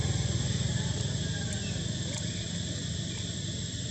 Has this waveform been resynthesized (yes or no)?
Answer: no